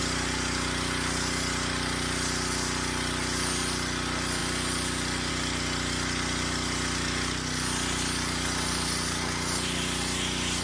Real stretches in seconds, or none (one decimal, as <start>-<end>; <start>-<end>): 0.0-10.6